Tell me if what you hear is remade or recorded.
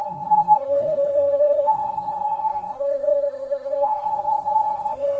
remade